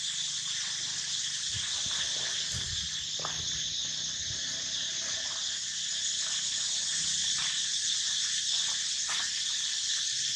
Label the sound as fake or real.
real